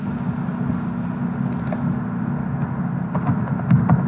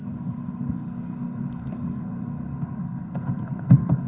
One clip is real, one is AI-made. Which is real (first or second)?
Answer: first